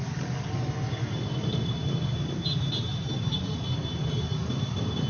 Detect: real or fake real